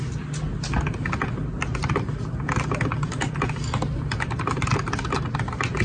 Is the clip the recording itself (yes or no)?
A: yes